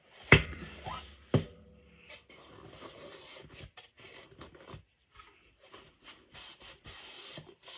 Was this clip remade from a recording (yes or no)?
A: no